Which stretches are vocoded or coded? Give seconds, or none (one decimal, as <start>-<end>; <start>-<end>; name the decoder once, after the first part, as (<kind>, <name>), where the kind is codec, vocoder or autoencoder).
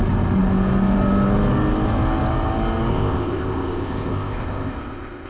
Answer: 2.9-5.3 (codec, ZipCodec)